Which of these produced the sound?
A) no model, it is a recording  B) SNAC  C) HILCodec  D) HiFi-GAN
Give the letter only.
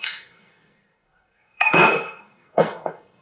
B